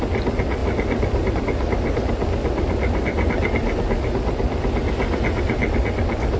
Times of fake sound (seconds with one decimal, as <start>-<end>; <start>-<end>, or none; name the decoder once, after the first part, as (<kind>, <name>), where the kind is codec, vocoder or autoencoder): none